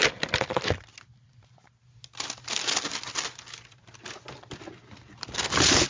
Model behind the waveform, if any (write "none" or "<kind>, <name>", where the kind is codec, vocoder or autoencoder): none